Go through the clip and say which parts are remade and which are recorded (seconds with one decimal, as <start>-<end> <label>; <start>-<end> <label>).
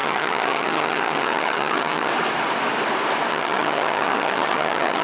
0.0-2.1 remade; 2.1-3.3 recorded; 3.3-5.0 remade